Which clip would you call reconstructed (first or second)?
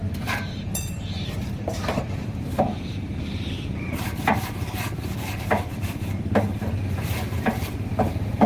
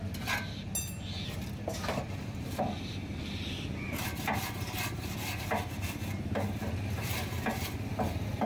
first